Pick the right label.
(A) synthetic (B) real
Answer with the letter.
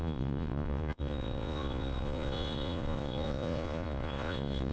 A